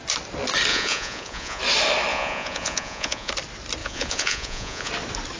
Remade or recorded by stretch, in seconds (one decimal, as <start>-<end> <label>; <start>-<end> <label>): 0.0-0.7 recorded; 0.7-1.6 remade; 1.6-2.1 recorded; 2.1-3.3 remade; 3.3-3.8 recorded; 3.8-4.9 remade; 4.9-5.4 recorded